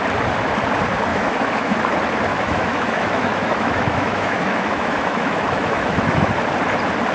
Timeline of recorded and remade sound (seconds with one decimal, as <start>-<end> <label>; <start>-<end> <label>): 0.0-1.1 recorded; 1.1-1.8 remade; 1.8-2.3 recorded; 2.3-6.3 remade; 6.3-7.1 recorded